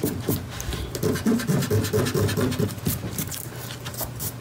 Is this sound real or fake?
real